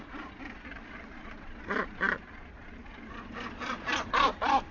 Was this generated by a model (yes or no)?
no